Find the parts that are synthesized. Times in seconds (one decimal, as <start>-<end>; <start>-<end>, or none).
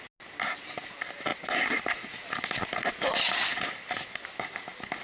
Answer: none